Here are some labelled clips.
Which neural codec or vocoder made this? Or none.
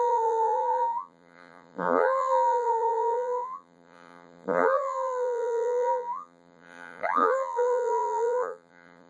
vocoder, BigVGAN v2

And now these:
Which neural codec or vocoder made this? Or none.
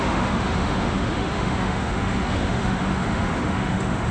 autoencoder, DAC-VAE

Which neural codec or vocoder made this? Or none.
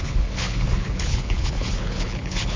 codec, HILCodec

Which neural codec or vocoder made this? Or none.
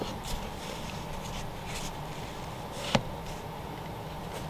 none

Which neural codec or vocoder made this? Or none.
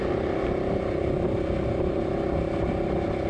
none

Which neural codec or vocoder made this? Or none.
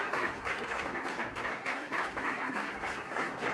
codec, SNAC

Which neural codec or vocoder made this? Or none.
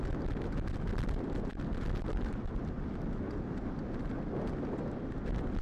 none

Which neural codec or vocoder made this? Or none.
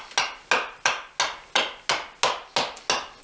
none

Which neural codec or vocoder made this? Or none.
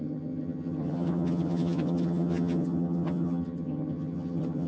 vocoder, HiFi-GAN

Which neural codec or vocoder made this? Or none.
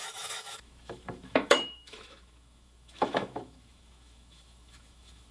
autoencoder, DAC-VAE